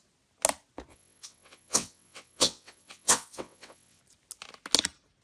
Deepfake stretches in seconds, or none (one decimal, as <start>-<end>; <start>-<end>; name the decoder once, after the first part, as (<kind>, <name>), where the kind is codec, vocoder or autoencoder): 0.9-4.0 (vocoder, WaveNeXt)